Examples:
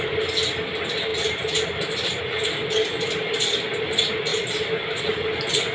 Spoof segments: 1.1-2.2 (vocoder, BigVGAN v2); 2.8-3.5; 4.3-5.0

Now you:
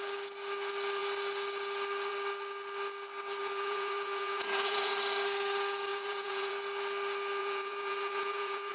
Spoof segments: 3.4-4.9 (vocoder, Vocos); 5.9-6.5; 7.4-8.7

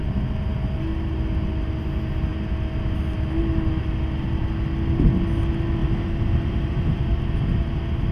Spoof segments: 5.8-7.0 (vocoder, BigVGAN v2)